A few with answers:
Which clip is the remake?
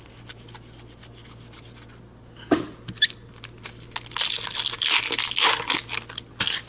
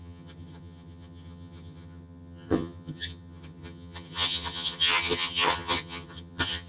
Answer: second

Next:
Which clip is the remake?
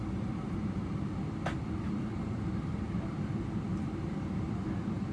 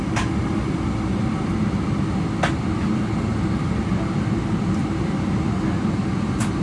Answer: first